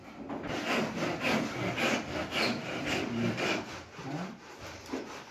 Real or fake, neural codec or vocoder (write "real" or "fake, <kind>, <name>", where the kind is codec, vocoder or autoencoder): real